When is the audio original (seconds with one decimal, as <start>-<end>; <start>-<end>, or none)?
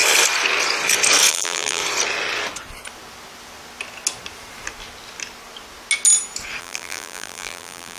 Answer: 0.0-1.3; 1.8-6.6